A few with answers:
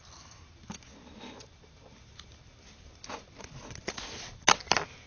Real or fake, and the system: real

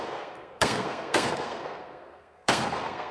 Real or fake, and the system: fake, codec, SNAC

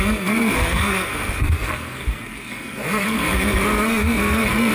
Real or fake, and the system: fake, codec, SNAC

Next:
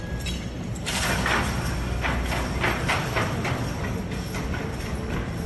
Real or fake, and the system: real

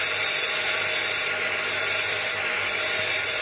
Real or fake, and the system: real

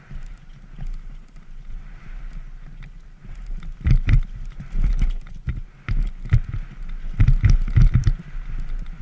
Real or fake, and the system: real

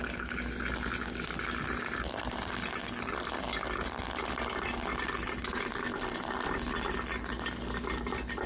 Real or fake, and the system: real